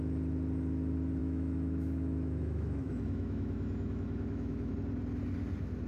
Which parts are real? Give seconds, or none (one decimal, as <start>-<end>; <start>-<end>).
0.0-1.2; 4.7-5.9